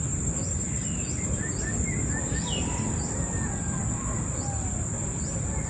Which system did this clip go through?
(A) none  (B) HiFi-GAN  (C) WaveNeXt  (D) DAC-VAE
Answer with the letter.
A